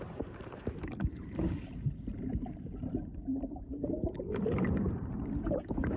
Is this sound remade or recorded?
remade